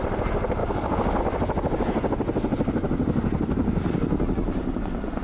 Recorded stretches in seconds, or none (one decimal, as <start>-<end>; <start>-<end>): 0.0-0.6; 1.2-5.2